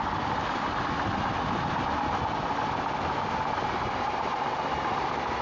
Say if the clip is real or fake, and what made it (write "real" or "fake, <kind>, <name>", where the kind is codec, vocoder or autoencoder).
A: real